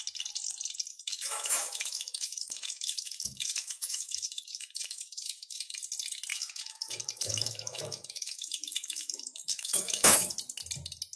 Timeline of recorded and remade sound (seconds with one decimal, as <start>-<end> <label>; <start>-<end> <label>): 0.0-0.9 recorded; 0.9-5.8 remade; 5.8-6.3 recorded; 6.3-10.3 remade; 10.3-11.2 recorded